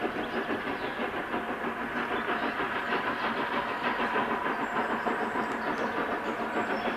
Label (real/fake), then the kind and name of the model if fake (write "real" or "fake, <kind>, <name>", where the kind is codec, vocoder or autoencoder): real